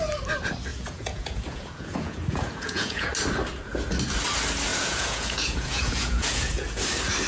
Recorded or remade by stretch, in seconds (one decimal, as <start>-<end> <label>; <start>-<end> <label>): 0.0-0.7 recorded; 0.7-3.1 remade; 3.1-4.7 recorded; 4.7-6.8 remade; 6.8-7.3 recorded